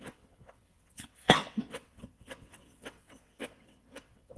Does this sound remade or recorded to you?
remade